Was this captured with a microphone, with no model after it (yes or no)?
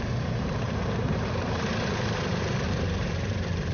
no